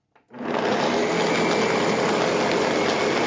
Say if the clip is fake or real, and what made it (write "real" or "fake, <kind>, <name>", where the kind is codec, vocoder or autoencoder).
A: real